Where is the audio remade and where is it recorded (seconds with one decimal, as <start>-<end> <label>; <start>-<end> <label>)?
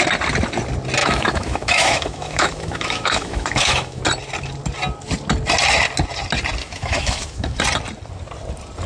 0.0-1.0 recorded; 1.0-4.0 remade; 4.0-6.6 recorded; 6.6-7.6 remade; 7.6-8.9 recorded